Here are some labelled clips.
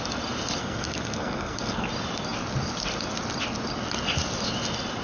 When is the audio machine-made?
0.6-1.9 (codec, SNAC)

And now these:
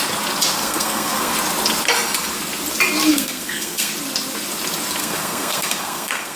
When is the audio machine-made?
0.6-1.3 (codec, SNAC); 3.1-3.9; 5.0-6.4